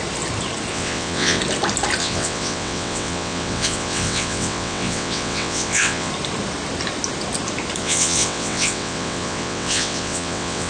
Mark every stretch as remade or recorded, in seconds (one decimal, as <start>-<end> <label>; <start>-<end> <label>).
0.0-0.7 recorded; 0.7-1.4 remade; 1.4-2.0 recorded; 2.0-6.1 remade; 6.1-7.8 recorded; 7.8-10.7 remade